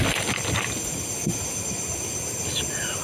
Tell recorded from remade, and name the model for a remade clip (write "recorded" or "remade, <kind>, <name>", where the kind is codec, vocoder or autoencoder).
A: recorded